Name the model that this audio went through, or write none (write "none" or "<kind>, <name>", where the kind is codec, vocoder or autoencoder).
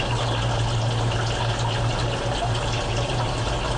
none